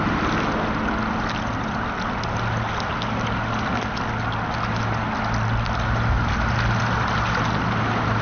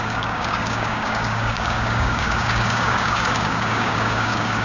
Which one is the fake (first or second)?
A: second